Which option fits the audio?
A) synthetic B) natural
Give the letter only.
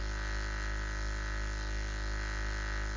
B